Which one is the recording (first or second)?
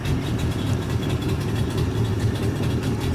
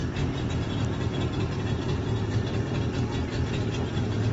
second